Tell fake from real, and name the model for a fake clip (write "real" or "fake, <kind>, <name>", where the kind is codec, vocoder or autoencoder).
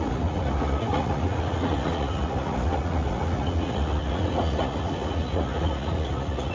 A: fake, vocoder, Vocos